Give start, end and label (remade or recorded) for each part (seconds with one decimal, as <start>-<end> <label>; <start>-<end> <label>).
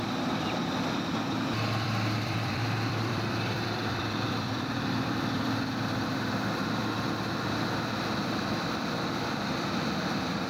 0.0-6.8 remade; 6.8-7.4 recorded; 7.4-10.5 remade